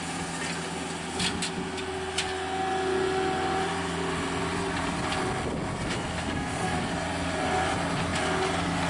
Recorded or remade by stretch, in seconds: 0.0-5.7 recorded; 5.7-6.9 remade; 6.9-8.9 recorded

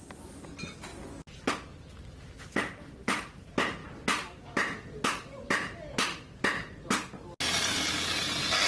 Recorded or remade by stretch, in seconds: 0.0-8.7 recorded

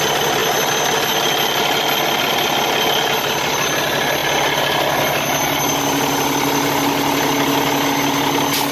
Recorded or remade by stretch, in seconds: 0.0-8.7 recorded